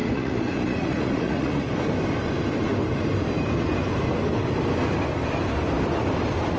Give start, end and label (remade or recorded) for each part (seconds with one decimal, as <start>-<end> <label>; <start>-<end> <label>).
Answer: 0.0-1.7 remade; 1.7-6.6 recorded